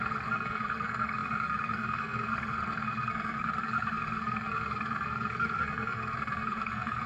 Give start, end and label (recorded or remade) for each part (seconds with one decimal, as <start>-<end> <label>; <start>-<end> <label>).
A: 0.0-7.1 remade